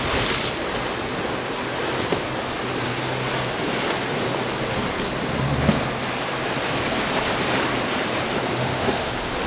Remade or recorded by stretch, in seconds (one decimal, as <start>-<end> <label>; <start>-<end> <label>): 0.0-8.5 recorded; 8.5-9.1 remade; 9.1-9.5 recorded